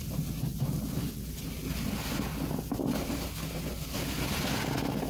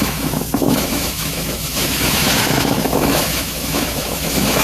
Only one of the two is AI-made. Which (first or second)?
second